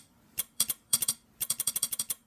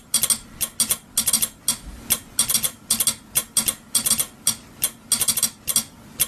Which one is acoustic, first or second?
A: second